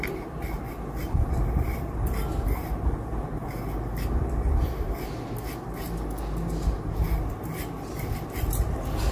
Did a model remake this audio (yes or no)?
no